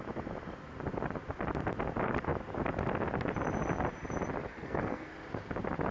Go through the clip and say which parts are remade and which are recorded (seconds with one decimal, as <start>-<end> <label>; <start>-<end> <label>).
0.0-4.5 recorded; 4.5-5.1 remade; 5.1-5.9 recorded